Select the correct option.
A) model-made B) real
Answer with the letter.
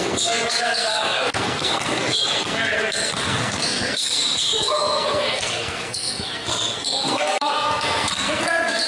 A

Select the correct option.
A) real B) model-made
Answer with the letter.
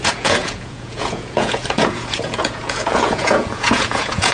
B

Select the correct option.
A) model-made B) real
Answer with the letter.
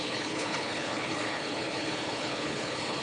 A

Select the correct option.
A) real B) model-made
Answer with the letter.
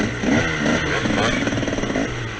A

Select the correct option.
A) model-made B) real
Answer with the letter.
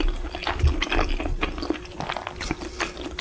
B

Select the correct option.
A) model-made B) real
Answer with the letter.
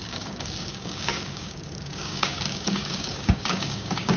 A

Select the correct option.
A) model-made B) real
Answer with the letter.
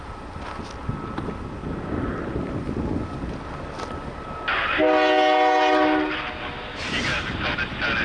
B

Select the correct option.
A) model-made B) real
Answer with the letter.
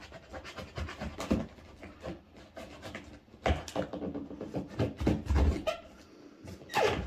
B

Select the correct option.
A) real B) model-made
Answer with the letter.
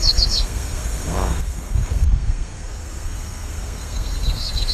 B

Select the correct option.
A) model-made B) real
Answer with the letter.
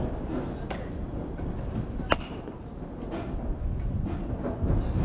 B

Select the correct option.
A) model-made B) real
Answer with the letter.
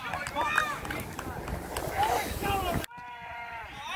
B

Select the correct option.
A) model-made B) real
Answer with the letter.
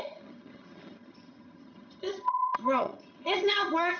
A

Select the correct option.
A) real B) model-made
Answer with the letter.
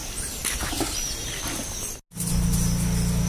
A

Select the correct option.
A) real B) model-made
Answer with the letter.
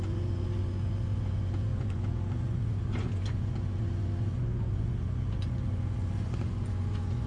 B